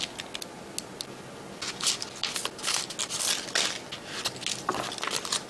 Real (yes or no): yes